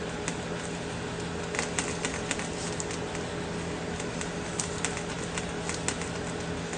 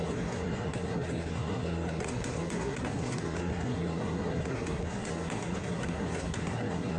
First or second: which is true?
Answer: first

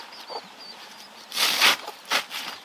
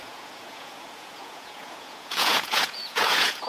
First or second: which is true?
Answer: first